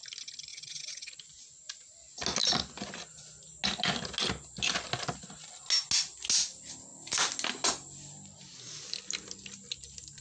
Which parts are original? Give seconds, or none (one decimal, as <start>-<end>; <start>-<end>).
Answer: 0.0-0.5; 1.1-10.2